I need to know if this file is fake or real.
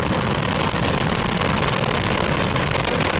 real